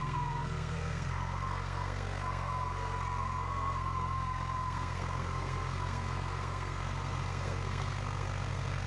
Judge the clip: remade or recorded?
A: remade